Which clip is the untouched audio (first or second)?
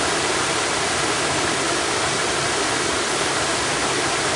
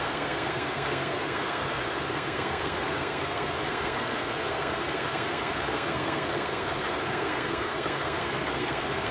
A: first